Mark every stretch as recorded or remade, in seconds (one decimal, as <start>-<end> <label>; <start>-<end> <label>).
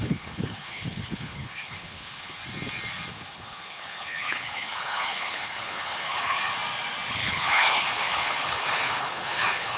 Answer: 0.0-2.4 remade; 2.4-3.1 recorded; 3.1-6.4 remade; 6.4-7.1 recorded; 7.1-9.8 remade